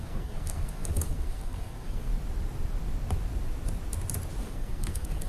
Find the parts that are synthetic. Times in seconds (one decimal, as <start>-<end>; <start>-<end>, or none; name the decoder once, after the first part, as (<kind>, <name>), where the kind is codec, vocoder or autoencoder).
0.0-2.1 (codec, SNAC); 4.4-5.3